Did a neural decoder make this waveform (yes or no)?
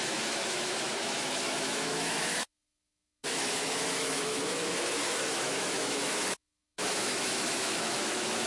yes